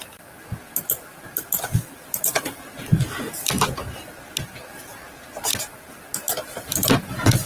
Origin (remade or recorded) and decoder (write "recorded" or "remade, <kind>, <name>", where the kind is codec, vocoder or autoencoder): recorded